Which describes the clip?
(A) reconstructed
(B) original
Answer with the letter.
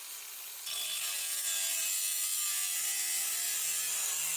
B